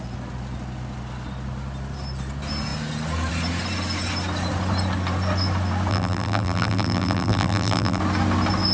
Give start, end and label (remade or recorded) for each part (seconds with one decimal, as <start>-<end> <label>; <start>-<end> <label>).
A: 0.0-5.9 recorded; 5.9-8.0 remade; 8.0-8.7 recorded